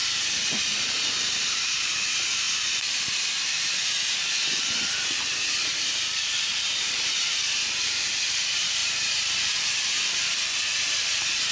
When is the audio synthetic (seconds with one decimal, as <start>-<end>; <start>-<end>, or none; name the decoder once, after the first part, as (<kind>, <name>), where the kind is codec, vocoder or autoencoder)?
0.0-11.5 (vocoder, BigVGAN v2)